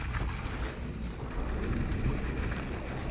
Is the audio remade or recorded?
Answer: recorded